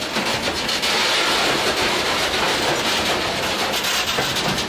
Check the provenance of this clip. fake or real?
real